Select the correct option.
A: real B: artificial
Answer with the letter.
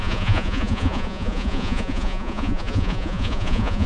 B